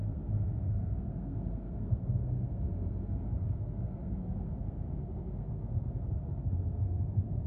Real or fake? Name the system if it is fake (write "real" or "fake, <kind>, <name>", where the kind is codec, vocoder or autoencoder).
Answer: fake, codec, SNAC